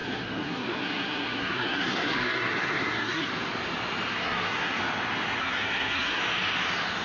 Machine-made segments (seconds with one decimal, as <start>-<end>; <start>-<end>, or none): 0.0-3.3; 4.1-4.8; 5.4-6.2